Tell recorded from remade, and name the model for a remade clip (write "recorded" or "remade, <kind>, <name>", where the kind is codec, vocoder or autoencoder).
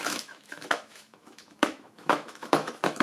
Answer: remade, autoencoder, DAC-VAE